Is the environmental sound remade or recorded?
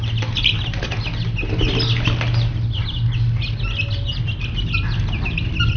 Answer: recorded